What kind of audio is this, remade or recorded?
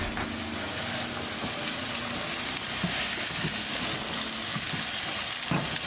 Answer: recorded